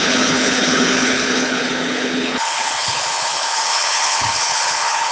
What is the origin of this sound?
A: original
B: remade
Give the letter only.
B